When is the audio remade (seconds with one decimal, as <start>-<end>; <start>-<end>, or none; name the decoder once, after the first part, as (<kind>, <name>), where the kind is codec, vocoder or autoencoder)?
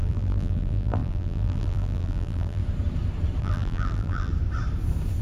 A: 0.0-2.6 (vocoder, BigVGAN v2); 3.4-4.3